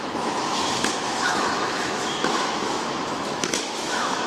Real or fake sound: fake